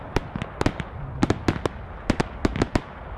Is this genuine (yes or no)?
yes